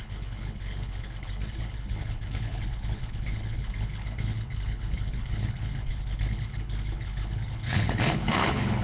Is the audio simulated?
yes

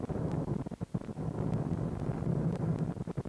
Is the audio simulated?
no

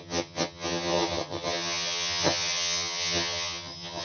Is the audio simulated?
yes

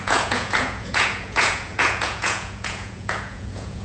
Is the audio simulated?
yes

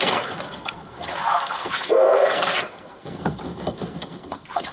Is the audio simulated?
yes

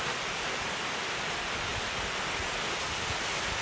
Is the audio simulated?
no